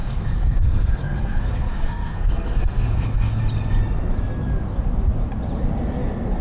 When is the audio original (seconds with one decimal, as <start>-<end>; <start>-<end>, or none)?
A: 3.4-6.4